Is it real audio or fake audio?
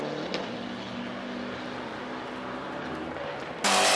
real